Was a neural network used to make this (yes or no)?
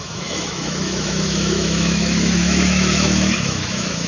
yes